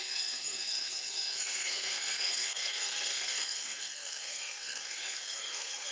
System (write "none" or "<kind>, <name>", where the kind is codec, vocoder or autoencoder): codec, SNAC